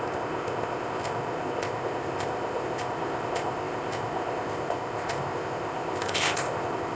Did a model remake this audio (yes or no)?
yes